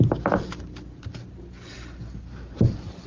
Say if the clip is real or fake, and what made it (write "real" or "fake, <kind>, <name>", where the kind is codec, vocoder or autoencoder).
real